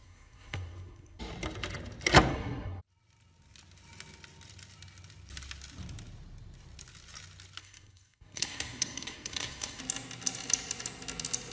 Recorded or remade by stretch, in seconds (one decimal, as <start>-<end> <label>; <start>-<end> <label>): 0.0-1.2 remade; 1.2-2.3 recorded; 2.3-2.8 remade; 2.8-7.6 recorded; 7.6-9.8 remade; 9.8-11.5 recorded